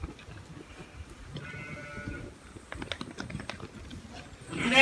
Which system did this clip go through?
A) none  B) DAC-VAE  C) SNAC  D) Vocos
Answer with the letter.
A